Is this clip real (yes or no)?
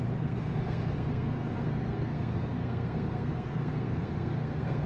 no